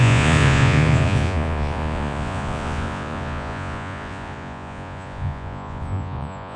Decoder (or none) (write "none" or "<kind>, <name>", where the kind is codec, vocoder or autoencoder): vocoder, Vocos